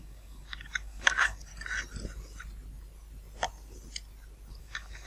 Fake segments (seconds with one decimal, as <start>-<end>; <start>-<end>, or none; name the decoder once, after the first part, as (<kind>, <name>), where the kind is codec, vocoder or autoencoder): 0.0-1.5 (codec, DAC); 4.6-5.1